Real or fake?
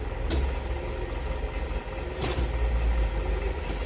real